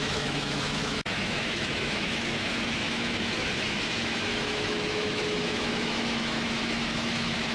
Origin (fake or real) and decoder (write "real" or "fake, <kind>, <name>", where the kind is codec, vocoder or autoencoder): fake, autoencoder, DAC-VAE